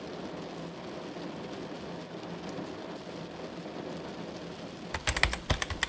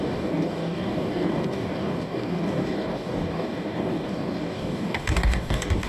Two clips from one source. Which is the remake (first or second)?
second